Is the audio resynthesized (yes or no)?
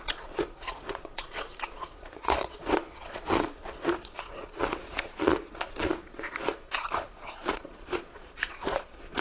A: yes